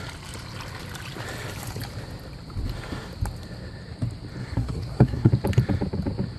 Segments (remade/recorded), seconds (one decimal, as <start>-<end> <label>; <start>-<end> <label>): 0.0-4.4 recorded; 4.4-5.3 remade; 5.3-6.4 recorded